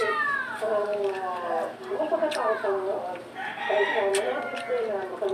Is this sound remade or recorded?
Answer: recorded